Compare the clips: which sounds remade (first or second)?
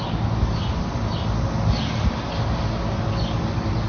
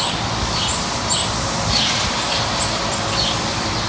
second